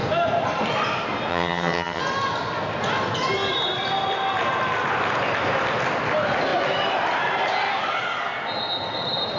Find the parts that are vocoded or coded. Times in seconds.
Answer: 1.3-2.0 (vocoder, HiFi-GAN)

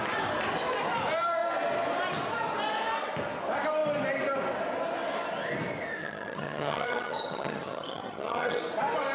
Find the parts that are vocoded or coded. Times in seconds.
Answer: 6.0-8.6 (vocoder, HiFi-GAN)